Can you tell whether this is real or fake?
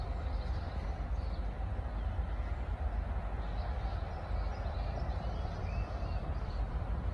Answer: fake